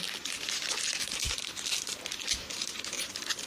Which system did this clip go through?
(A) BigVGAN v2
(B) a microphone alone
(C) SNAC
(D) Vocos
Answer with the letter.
B